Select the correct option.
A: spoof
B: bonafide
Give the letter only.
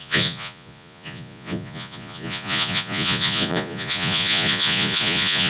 A